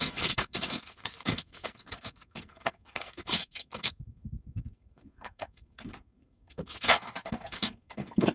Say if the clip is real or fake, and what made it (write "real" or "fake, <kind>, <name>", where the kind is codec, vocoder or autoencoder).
fake, codec, SNAC